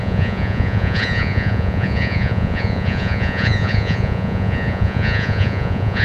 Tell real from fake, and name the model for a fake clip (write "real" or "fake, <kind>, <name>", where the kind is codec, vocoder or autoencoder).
fake, vocoder, Vocos